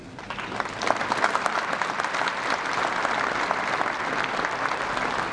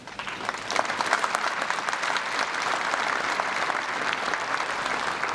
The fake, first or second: second